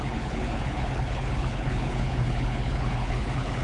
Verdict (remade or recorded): remade